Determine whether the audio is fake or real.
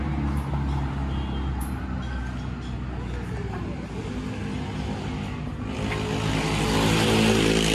real